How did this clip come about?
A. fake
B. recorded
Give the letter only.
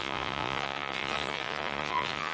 A